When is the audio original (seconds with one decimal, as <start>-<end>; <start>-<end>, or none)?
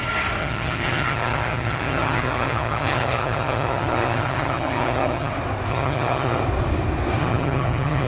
0.0-0.4; 5.3-5.7; 6.4-7.2